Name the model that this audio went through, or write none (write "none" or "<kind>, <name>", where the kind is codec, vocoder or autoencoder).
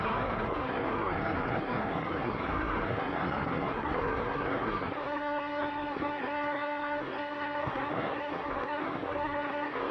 codec, SNAC